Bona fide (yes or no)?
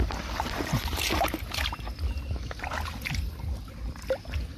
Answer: yes